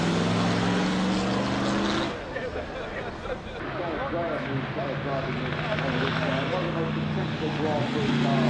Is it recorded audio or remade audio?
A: recorded